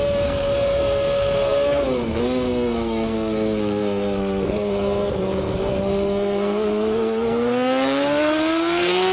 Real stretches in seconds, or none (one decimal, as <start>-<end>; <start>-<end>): none